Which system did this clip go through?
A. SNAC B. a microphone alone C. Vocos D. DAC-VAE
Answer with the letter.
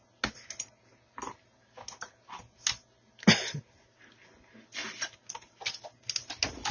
B